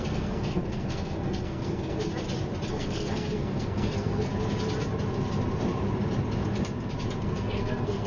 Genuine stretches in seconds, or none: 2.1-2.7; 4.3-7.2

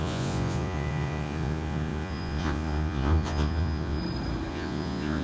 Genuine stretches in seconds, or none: 4.0-4.5

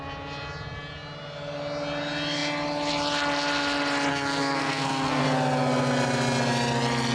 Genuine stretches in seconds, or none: 0.0-4.1; 5.2-7.1

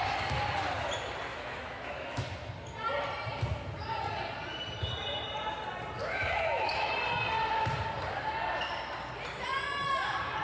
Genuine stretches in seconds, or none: 0.0-1.3; 2.2-6.0; 6.9-10.4

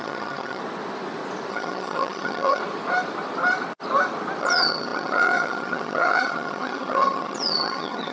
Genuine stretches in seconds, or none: 0.6-1.5; 2.6-4.4

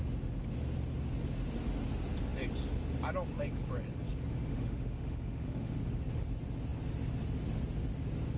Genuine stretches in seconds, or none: 0.0-4.5; 5.8-8.4